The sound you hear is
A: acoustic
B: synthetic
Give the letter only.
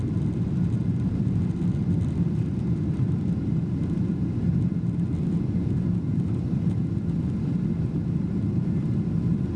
B